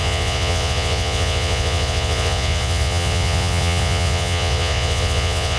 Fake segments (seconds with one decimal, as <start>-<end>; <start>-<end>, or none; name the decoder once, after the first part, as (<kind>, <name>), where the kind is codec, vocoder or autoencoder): 0.0-5.6 (vocoder, Vocos)